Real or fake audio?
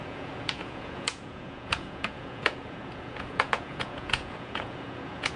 fake